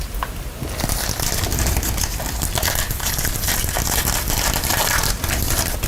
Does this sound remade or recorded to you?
recorded